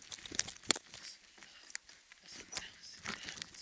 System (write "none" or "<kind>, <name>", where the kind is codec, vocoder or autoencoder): none